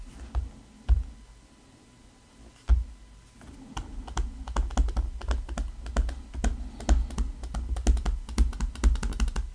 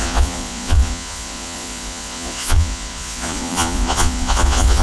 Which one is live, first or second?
first